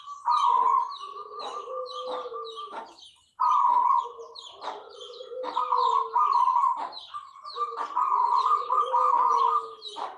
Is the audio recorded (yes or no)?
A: yes